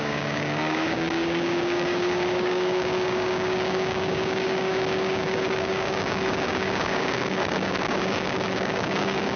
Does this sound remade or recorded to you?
remade